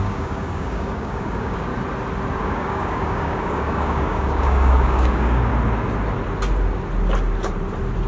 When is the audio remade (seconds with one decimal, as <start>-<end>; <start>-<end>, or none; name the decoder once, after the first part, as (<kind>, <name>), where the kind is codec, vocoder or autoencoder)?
0.0-1.7 (codec, DAC); 2.4-5.5

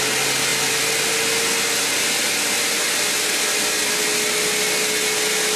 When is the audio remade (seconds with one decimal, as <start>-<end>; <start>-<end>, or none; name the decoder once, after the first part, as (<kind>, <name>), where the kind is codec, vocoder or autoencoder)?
none

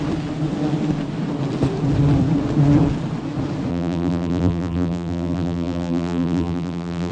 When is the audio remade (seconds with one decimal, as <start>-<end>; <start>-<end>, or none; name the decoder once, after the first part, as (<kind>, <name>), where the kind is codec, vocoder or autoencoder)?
3.7-7.1 (vocoder, BigVGAN v2)